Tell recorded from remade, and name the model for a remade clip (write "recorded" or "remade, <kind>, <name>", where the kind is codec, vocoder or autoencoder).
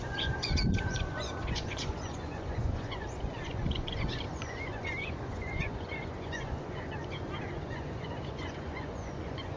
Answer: remade, vocoder, Vocos